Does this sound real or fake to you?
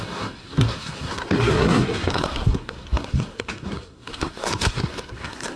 fake